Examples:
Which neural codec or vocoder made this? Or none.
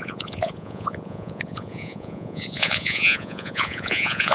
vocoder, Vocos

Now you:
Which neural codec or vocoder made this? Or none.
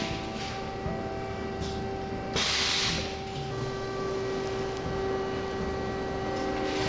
none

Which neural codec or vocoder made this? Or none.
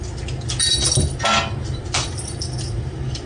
none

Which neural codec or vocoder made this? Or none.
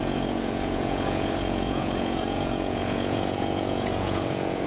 vocoder, Vocos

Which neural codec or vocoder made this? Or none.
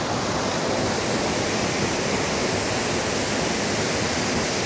none